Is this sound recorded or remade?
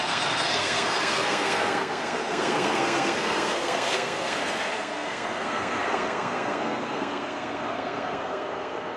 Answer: remade